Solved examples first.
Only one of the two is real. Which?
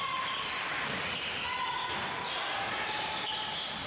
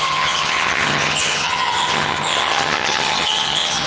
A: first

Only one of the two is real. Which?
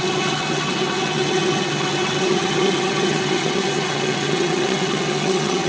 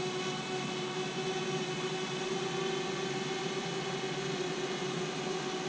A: second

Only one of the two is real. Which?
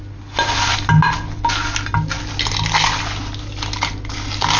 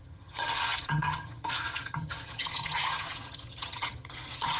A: first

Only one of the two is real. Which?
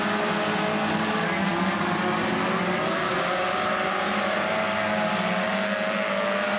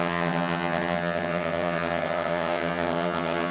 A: first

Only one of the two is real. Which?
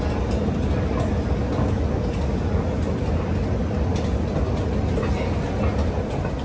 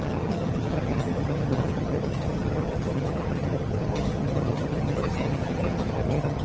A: first